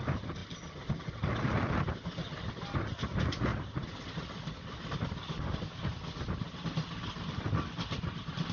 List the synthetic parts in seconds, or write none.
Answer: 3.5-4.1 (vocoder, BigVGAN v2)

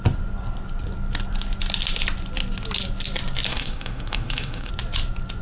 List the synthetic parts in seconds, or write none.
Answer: 3.5-4.7 (autoencoder, DAC-VAE)

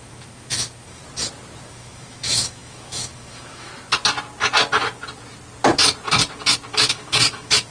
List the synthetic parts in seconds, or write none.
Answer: 0.0-1.0 (autoencoder, DAC-VAE); 1.7-3.7; 6.7-7.7